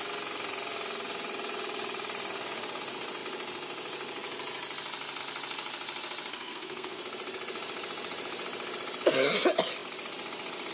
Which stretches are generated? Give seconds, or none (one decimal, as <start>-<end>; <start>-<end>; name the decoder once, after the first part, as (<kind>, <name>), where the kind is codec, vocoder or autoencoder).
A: 6.3-7.0 (codec, SNAC)